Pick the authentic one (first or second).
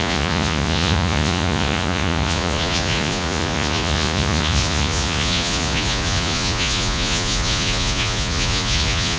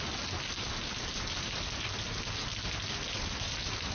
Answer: second